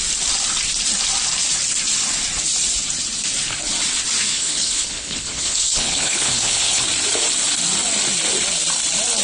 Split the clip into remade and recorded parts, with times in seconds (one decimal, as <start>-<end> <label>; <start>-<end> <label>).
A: 0.0-4.3 recorded; 4.3-6.8 remade; 6.8-9.2 recorded